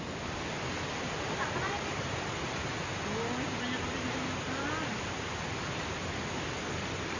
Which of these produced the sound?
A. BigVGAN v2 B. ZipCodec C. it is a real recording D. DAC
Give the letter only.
C